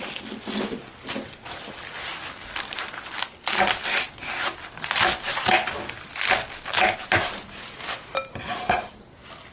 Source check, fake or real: real